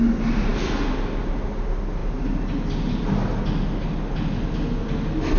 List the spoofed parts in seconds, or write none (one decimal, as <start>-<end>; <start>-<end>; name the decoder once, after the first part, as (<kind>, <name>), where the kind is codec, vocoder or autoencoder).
none